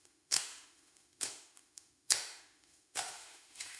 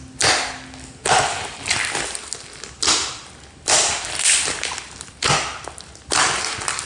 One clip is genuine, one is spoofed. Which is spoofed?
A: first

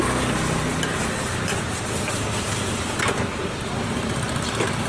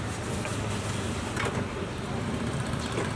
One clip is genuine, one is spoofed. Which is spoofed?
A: first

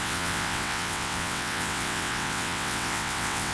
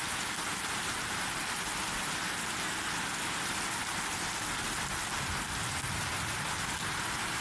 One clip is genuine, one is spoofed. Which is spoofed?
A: first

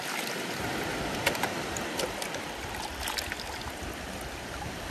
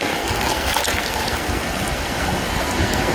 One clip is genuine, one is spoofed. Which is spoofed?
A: second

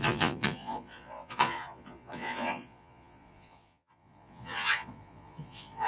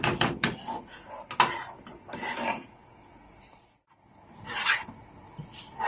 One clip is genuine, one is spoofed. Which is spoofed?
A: first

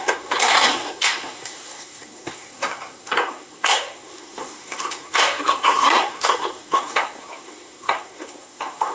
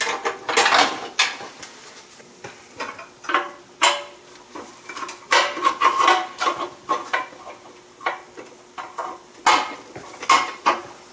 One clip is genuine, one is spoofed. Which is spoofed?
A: first